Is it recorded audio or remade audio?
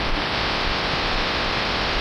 recorded